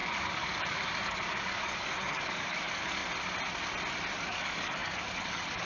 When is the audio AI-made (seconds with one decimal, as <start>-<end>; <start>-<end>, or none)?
0.0-3.0; 4.1-5.7